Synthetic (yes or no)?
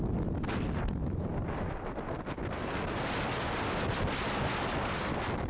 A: no